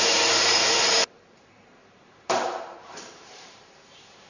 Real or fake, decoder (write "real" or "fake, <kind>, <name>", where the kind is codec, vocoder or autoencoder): fake, vocoder, BigVGAN v2